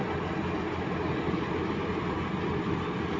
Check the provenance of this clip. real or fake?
real